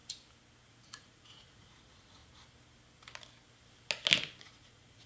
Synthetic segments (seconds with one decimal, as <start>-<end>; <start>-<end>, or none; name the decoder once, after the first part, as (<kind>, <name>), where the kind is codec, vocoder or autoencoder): 0.7-2.2 (vocoder, Vocos); 4.4-5.1